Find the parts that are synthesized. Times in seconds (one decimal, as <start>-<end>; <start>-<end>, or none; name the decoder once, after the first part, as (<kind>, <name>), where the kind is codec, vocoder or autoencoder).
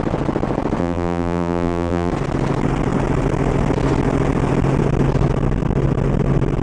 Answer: 0.8-2.1 (vocoder, BigVGAN v2)